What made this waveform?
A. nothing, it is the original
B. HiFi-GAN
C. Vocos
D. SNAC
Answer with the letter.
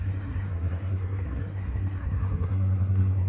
D